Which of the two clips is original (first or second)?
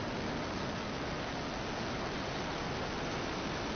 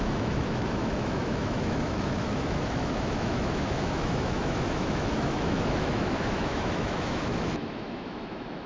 first